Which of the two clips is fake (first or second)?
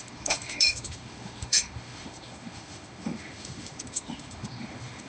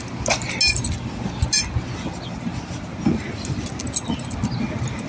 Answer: first